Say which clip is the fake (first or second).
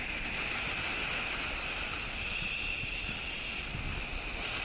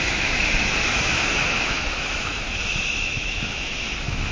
second